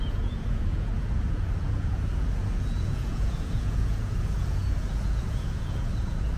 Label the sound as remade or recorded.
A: remade